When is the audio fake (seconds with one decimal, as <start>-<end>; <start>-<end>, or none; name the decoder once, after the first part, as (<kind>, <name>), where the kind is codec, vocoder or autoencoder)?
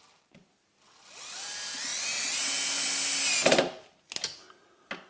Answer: none